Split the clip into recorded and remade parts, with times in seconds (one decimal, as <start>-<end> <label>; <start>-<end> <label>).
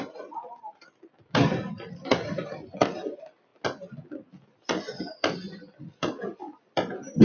0.0-3.5 remade; 3.5-4.1 recorded; 4.1-7.2 remade